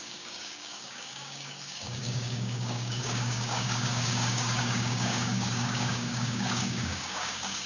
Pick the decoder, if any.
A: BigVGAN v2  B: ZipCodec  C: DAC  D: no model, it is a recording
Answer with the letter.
C